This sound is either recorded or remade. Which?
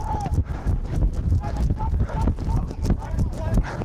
recorded